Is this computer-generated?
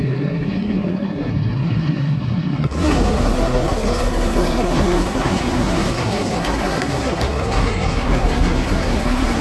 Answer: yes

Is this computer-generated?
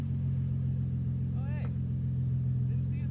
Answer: no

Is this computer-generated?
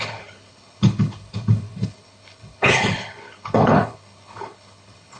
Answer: yes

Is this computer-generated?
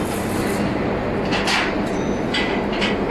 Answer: no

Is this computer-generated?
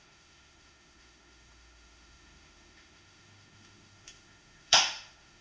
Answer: yes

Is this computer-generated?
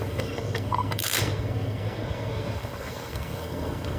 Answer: yes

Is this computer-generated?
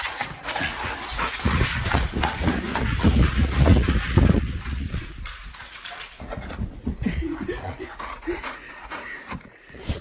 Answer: yes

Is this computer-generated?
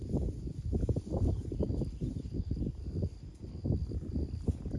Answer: no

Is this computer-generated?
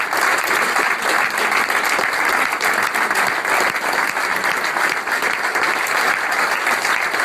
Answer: no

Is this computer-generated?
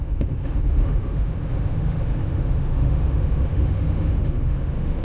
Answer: yes